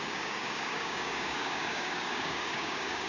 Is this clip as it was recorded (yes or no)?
no